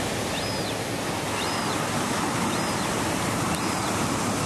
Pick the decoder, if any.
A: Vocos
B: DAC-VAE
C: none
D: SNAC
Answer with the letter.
C